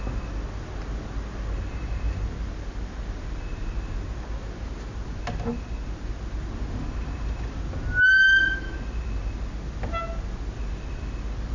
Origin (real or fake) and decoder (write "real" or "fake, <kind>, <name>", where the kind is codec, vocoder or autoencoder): real